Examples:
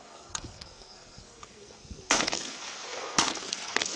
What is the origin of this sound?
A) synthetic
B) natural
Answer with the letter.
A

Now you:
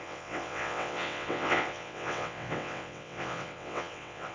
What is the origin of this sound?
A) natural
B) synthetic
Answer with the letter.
B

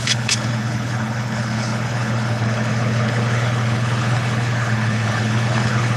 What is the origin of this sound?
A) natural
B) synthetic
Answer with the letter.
B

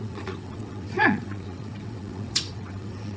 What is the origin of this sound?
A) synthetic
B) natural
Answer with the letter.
A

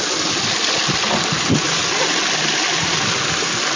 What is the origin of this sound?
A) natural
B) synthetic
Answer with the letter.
A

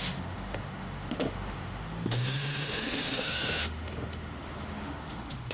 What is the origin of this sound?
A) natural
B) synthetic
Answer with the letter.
B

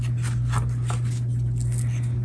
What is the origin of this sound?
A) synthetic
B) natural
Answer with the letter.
B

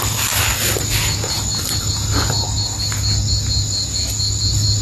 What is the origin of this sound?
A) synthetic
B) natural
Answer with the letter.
B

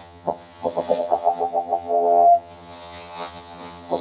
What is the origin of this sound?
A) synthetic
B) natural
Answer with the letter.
A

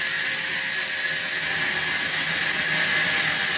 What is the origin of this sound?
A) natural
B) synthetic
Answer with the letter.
A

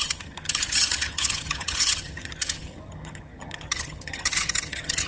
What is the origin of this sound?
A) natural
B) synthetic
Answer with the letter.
B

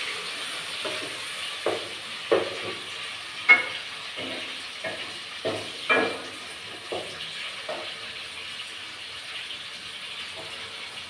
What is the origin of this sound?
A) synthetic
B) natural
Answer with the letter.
B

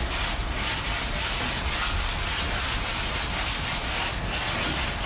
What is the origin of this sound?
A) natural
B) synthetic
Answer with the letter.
A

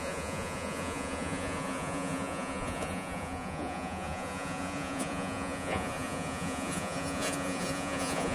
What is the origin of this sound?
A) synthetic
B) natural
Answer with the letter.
A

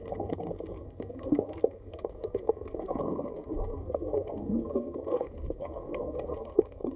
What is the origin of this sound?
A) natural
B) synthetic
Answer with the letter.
B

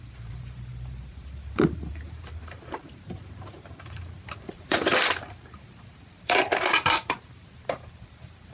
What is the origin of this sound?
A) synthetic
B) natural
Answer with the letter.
A